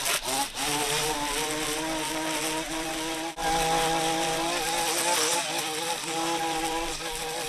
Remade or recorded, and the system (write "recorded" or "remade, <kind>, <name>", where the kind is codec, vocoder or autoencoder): recorded